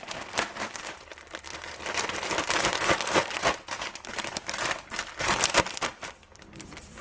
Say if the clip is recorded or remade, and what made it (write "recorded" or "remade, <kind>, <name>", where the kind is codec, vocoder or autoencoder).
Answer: remade, vocoder, BigVGAN v2